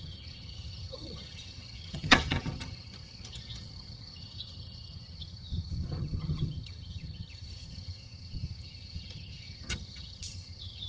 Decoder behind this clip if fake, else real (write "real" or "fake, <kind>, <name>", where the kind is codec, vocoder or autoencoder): fake, vocoder, HiFi-GAN